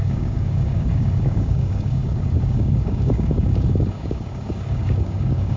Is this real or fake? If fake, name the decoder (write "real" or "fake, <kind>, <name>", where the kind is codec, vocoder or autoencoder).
fake, codec, DAC